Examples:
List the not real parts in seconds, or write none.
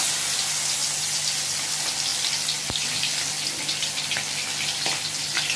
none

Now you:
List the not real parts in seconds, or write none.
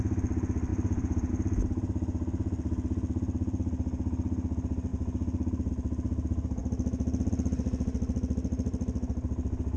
0.7-1.3 (vocoder, BigVGAN v2)